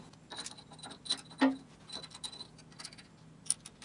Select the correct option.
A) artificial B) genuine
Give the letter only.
B